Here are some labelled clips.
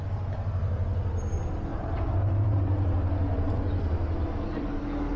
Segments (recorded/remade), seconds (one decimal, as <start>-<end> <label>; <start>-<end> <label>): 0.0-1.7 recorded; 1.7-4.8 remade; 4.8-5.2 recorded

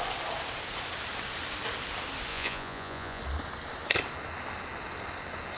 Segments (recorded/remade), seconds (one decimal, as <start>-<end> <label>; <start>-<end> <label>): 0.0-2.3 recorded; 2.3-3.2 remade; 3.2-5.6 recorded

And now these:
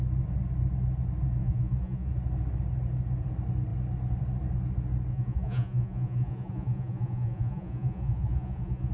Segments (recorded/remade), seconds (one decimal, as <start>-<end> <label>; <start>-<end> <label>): 0.0-1.4 recorded; 1.4-2.1 remade; 2.1-5.1 recorded; 5.1-8.9 remade

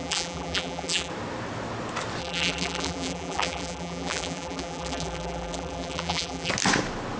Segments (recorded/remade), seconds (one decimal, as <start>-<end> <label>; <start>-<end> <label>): 0.0-1.1 remade; 1.1-2.2 recorded; 2.2-6.5 remade; 6.5-7.2 recorded

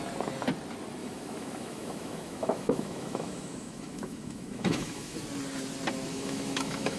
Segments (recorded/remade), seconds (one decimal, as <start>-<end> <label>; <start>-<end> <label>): 0.0-1.0 recorded; 1.0-5.2 remade; 5.2-6.1 recorded; 6.1-7.0 remade

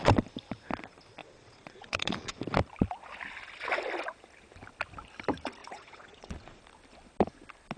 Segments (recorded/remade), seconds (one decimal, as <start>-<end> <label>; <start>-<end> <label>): 0.0-1.2 recorded; 1.2-2.4 remade; 2.4-5.6 recorded; 5.6-6.6 remade; 6.6-7.8 recorded

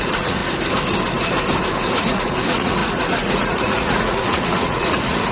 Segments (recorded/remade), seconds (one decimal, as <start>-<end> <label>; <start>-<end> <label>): 0.0-0.4 remade; 0.4-2.0 recorded; 2.0-5.3 remade

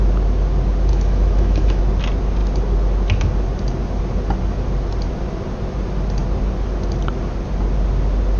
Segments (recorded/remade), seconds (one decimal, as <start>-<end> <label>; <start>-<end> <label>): 0.0-0.9 recorded; 0.9-1.8 remade; 1.8-8.4 recorded